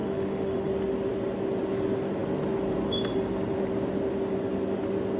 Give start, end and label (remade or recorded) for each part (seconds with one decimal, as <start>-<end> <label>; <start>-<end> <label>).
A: 0.0-0.7 remade; 0.7-5.2 recorded

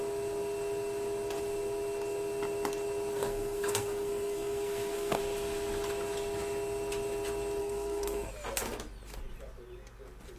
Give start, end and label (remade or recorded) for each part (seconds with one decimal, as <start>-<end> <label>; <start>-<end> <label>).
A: 0.0-3.1 recorded; 3.1-5.2 remade; 5.2-7.6 recorded; 7.6-8.3 remade; 8.3-10.4 recorded

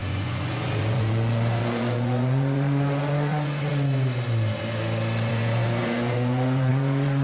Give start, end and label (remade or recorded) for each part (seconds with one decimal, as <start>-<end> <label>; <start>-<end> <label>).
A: 0.0-3.7 remade; 3.7-5.3 recorded; 5.3-7.2 remade

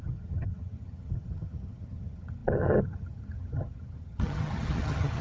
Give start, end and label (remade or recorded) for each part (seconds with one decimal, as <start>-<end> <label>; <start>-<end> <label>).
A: 0.0-5.2 remade

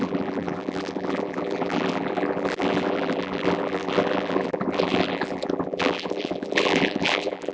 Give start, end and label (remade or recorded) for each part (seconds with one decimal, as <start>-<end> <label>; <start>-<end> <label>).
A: 0.0-7.5 remade

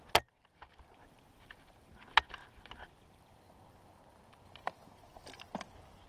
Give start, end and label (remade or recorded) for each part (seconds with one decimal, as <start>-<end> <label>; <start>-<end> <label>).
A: 0.0-4.6 recorded; 4.6-5.5 remade; 5.5-6.1 recorded